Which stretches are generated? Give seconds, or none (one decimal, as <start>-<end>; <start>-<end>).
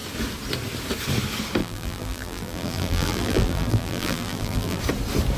1.6-4.8